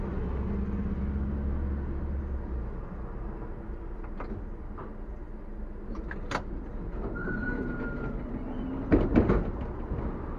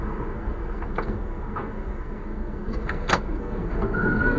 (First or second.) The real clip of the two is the first